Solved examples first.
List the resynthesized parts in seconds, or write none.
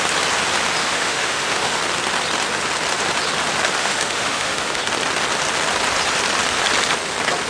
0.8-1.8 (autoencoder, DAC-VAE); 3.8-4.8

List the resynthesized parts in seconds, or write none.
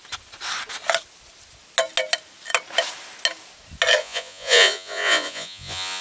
4.0-6.0 (vocoder, Vocos)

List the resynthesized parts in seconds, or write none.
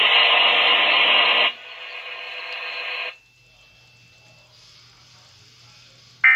none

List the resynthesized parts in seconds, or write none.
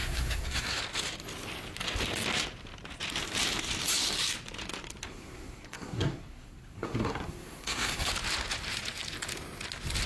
0.0-0.8 (codec, SNAC); 5.1-8.1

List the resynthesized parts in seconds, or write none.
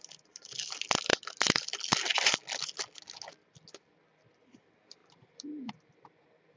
1.1-1.7 (vocoder, BigVGAN v2); 5.0-5.7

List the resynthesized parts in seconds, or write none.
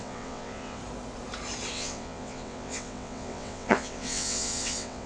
0.0-0.8 (vocoder, WaveNeXt); 1.7-5.1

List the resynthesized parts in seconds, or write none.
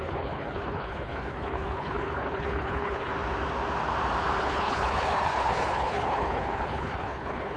0.0-3.1 (codec, HILCodec); 4.4-7.6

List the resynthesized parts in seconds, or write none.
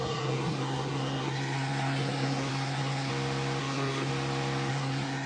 0.0-3.1 (codec, SNAC); 3.6-4.1; 4.7-5.3